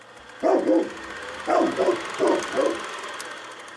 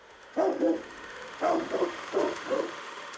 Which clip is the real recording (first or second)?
first